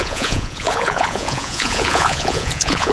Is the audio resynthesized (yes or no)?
yes